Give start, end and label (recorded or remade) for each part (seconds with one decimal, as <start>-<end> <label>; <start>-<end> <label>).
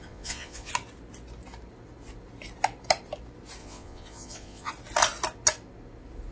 0.0-0.7 remade; 0.7-3.6 recorded; 3.6-4.7 remade; 4.7-6.3 recorded